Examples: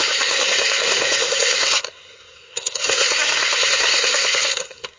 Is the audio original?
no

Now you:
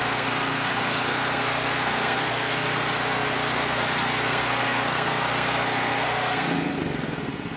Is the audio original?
no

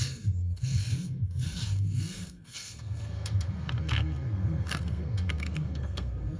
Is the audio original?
no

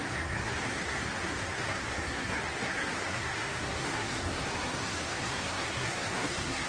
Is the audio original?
no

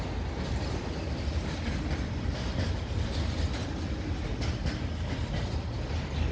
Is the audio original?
yes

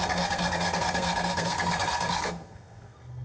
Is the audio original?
no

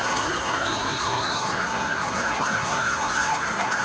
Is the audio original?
no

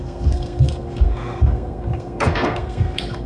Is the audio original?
no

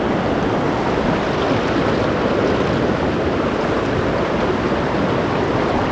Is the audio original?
yes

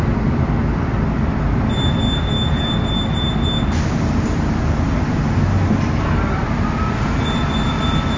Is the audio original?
yes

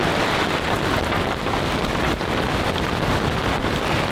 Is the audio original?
yes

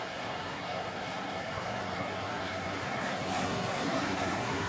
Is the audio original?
no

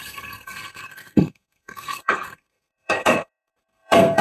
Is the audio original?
no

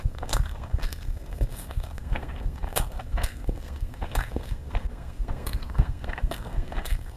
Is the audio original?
no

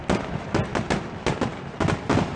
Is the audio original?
yes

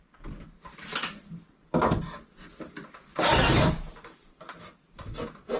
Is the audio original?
yes